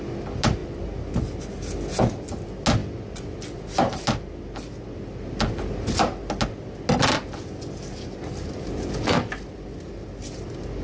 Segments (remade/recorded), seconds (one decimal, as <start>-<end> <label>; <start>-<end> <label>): 0.0-10.8 recorded